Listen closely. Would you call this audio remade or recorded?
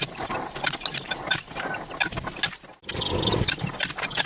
recorded